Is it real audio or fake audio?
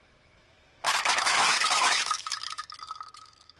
fake